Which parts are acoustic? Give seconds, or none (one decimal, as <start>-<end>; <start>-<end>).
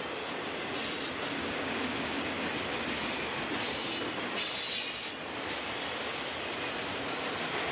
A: 0.0-1.4; 2.2-7.7